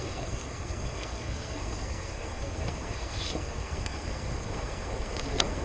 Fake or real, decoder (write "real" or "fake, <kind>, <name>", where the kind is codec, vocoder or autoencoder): fake, codec, SNAC